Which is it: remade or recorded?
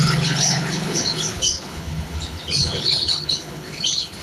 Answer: remade